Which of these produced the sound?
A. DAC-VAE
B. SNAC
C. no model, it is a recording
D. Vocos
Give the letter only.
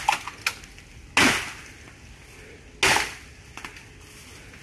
C